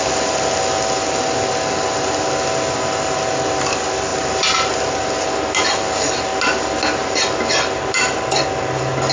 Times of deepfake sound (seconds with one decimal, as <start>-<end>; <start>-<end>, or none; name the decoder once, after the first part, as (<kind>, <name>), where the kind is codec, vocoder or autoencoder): none